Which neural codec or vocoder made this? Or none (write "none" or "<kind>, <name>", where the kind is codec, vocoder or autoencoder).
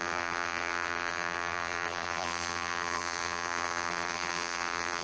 vocoder, BigVGAN v2